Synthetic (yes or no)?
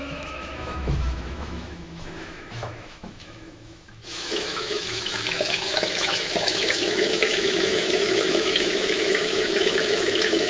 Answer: yes